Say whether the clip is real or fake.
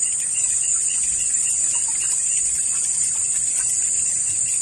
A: real